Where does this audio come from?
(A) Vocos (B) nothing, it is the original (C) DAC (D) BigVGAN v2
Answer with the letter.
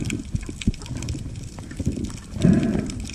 D